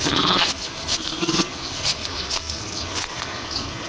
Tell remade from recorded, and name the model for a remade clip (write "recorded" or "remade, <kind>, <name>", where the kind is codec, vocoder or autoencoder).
remade, codec, SNAC